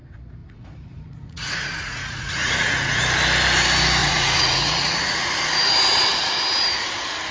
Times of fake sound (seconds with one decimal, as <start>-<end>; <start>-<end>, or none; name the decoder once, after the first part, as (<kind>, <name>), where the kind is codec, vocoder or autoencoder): 0.4-3.0 (vocoder, Vocos); 4.0-5.4